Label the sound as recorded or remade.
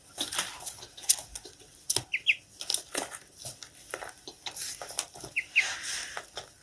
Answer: recorded